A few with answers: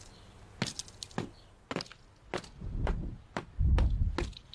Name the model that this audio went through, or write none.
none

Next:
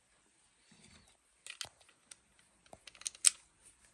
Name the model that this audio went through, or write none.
none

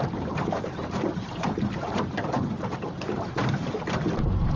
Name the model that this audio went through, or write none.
vocoder, BigVGAN v2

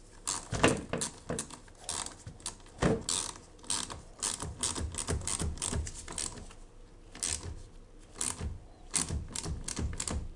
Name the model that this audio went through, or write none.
none